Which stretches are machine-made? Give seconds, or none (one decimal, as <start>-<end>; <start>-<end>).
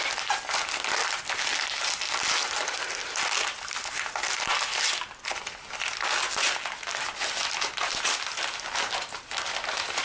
none